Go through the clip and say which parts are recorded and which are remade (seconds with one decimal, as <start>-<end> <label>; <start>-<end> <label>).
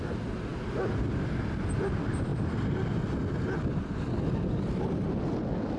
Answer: 0.0-5.8 recorded